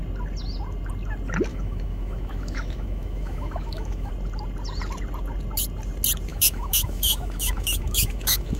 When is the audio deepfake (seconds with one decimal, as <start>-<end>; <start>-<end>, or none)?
1.5-4.1; 6.3-8.6